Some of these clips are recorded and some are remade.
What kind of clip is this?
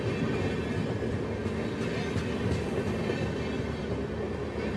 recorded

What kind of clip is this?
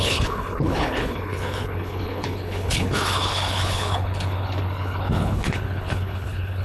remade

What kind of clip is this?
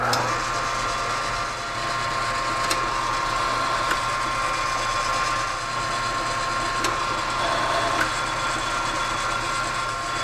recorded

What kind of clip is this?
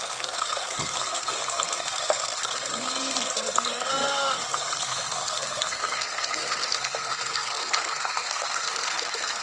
remade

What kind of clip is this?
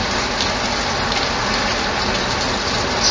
recorded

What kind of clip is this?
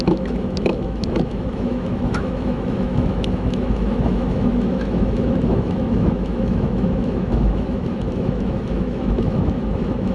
remade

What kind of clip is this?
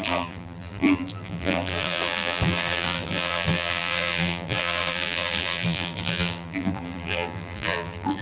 remade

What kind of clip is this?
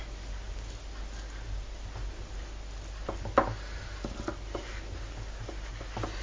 recorded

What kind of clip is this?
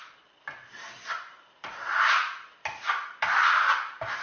recorded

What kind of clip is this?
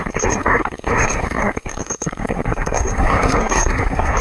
remade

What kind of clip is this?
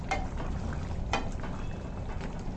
remade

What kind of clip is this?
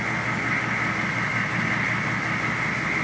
recorded